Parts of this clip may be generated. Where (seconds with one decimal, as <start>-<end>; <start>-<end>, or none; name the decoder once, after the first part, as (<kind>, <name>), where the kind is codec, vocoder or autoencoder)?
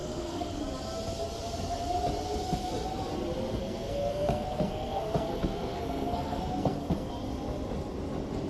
0.0-0.6 (codec, SNAC); 3.5-7.1